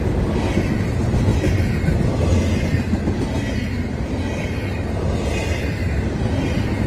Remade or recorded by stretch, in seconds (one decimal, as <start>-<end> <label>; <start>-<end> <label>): 0.0-6.9 recorded